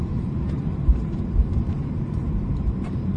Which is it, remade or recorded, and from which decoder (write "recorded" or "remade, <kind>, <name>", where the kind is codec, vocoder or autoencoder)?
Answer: remade, vocoder, BigVGAN v2